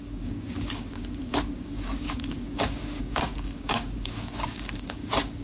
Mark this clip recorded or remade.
remade